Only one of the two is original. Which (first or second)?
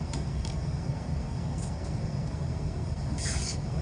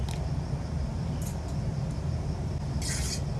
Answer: second